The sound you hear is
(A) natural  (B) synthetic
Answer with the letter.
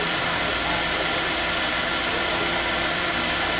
B